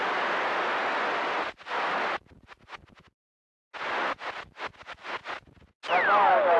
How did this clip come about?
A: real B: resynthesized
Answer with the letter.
A